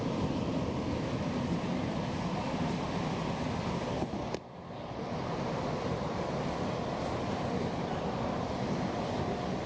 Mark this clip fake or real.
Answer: real